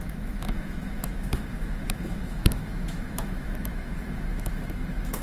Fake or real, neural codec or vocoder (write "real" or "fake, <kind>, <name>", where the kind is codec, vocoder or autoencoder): fake, autoencoder, DAC-VAE